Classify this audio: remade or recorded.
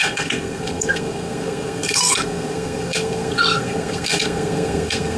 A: remade